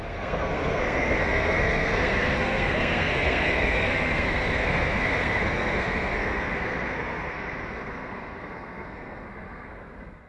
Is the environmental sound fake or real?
fake